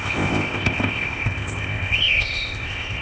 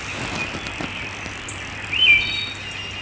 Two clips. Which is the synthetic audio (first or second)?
first